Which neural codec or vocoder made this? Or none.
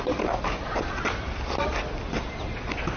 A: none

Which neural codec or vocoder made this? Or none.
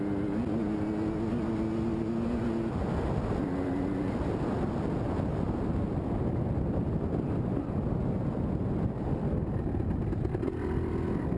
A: none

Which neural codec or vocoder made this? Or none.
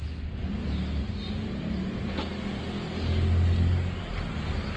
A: none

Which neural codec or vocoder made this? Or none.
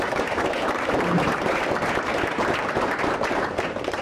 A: vocoder, BigVGAN v2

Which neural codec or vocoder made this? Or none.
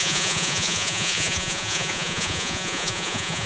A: vocoder, Vocos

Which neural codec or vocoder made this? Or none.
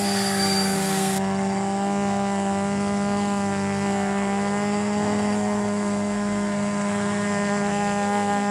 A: codec, SNAC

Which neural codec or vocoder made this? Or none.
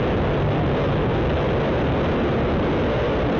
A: none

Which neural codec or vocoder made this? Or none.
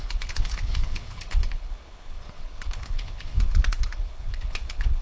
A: codec, HILCodec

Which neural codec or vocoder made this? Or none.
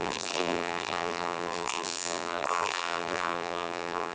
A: vocoder, BigVGAN v2